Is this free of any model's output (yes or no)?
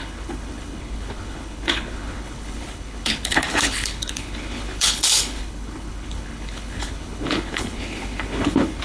no